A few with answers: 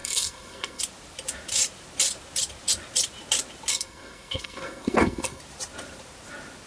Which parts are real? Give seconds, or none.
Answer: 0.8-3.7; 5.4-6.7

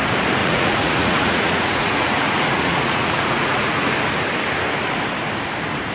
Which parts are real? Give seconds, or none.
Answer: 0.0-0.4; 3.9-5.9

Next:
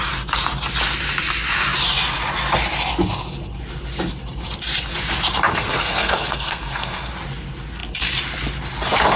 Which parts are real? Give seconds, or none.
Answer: 0.0-5.5; 7.1-9.2

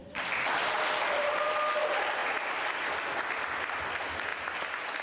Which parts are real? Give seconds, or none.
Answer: 0.0-2.2; 3.0-5.0

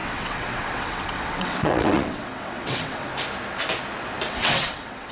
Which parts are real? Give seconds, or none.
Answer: 3.1-4.3

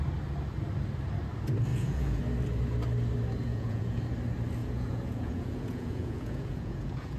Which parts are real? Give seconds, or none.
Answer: 0.0-1.7; 2.2-3.5; 4.0-4.6

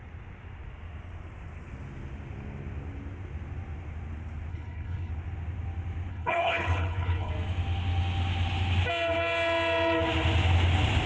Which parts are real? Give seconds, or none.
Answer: 0.0-4.5; 5.1-6.1; 7.3-11.1

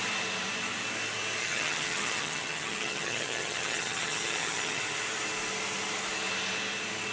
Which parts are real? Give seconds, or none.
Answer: 0.0-1.4; 4.8-7.1